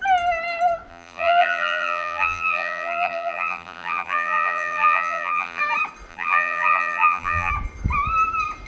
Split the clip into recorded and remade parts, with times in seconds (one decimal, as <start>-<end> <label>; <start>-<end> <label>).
0.0-0.9 recorded; 0.9-5.6 remade; 5.6-6.1 recorded; 6.1-7.5 remade; 7.5-8.7 recorded